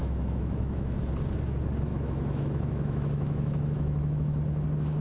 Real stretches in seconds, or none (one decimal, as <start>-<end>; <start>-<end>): 1.0-1.9; 4.4-5.0